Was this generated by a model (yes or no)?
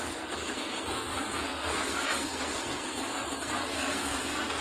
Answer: yes